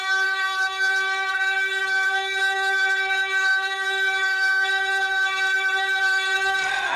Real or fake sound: fake